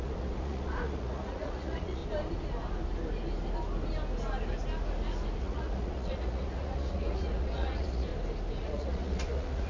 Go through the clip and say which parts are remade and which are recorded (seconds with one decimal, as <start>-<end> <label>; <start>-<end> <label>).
0.0-2.0 remade; 2.0-5.4 recorded; 5.4-8.1 remade; 8.1-8.6 recorded; 8.6-9.7 remade

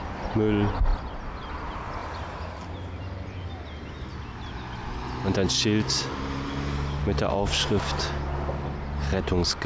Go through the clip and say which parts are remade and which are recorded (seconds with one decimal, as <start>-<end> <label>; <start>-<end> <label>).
0.0-9.7 recorded

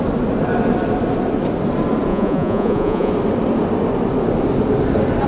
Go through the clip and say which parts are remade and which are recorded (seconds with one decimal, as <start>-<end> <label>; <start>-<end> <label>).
0.0-2.1 recorded; 2.1-3.1 remade; 3.1-5.3 recorded

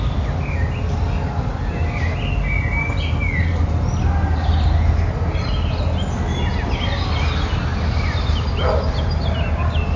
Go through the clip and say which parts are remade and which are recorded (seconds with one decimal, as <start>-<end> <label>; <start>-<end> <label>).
0.0-10.0 recorded

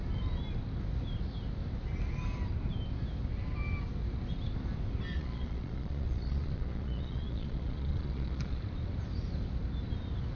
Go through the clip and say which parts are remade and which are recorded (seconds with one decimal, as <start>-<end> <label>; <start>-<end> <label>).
0.0-5.1 recorded; 5.1-8.6 remade; 8.6-10.4 recorded

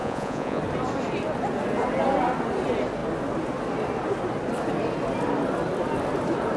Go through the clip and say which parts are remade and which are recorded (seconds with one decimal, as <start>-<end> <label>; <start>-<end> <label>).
0.0-0.6 remade; 0.6-6.6 recorded

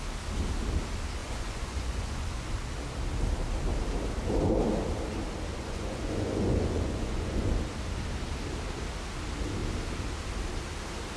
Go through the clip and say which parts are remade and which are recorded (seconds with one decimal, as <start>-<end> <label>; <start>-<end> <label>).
0.0-1.2 recorded; 1.2-2.6 remade; 2.6-5.5 recorded; 5.5-7.5 remade; 7.5-11.2 recorded

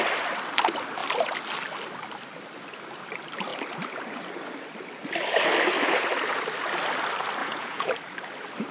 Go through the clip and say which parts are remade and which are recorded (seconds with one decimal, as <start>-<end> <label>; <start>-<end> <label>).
0.0-7.4 recorded; 7.4-7.9 remade; 7.9-8.7 recorded